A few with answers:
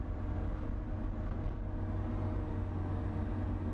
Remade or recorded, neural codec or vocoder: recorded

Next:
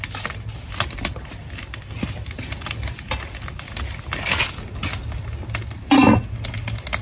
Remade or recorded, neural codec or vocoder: recorded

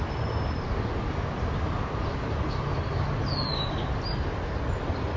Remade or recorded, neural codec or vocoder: recorded